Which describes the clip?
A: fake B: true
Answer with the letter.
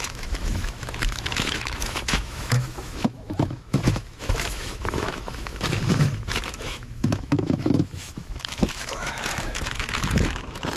A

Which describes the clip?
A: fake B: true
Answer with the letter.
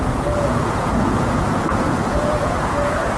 A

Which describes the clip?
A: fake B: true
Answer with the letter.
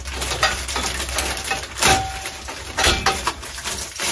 B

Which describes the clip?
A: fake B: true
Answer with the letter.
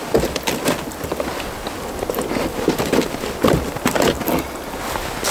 B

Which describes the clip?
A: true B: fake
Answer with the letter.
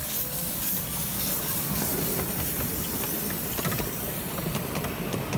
A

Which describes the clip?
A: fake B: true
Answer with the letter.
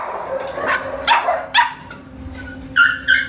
B